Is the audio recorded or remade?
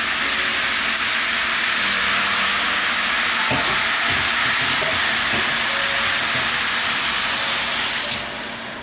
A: recorded